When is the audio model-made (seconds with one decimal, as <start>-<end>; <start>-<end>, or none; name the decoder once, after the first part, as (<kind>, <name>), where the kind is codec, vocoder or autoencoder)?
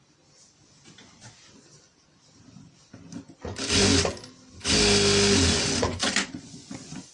5.8-7.1 (vocoder, Vocos)